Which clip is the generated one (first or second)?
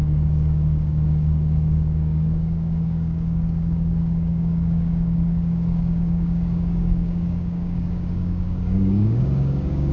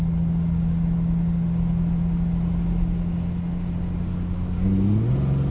first